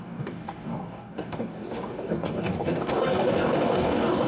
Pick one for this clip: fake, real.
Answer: fake